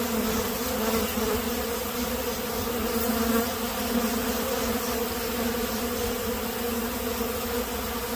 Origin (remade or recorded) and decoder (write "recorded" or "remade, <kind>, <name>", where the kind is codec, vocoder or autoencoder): recorded